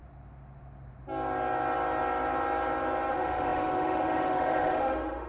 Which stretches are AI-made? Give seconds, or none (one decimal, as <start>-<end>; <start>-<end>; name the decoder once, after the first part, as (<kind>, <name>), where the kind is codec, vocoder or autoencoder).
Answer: 3.1-5.3 (autoencoder, DAC-VAE)

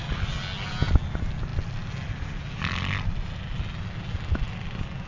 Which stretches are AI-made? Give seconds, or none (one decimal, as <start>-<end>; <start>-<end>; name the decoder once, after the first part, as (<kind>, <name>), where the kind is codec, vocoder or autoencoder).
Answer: none

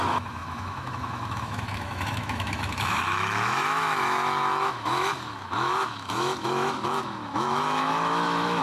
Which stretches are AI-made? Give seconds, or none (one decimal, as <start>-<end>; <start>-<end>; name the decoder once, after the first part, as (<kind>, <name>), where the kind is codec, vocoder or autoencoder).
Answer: 0.0-8.6 (autoencoder, DAC-VAE)

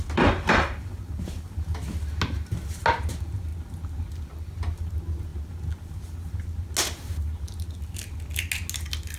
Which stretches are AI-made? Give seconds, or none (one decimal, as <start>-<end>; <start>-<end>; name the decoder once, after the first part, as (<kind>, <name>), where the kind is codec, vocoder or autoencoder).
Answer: none

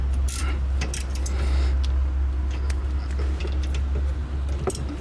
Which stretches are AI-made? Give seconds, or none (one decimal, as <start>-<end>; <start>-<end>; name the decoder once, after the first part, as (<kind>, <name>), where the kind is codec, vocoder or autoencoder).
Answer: none